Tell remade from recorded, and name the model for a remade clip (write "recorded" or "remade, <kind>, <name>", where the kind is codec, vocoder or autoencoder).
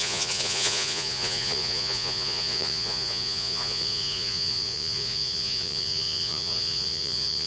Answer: remade, vocoder, Vocos